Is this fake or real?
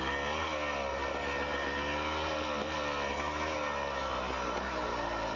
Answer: real